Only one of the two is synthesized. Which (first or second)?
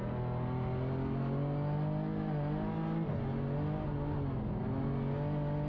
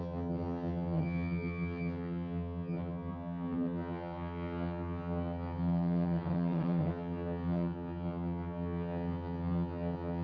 second